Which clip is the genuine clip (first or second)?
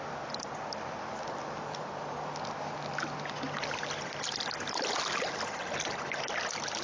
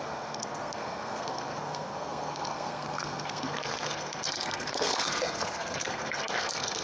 first